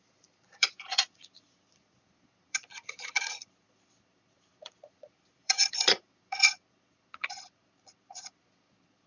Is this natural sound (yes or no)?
no